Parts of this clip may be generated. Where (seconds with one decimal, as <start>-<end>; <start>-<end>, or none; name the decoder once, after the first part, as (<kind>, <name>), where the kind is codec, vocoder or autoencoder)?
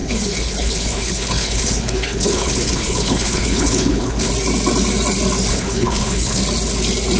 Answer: 0.0-4.3 (codec, HILCodec); 5.5-6.4